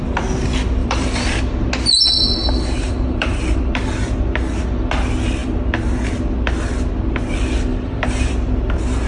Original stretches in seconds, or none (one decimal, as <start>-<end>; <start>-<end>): 0.0-0.8; 1.4-2.4; 3.7-7.7; 8.3-9.1